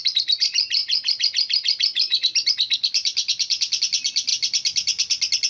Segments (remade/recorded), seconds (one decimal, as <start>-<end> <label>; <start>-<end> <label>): 0.0-5.5 recorded

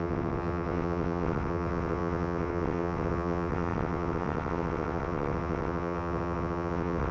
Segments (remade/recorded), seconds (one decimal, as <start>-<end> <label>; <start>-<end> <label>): 0.0-7.1 remade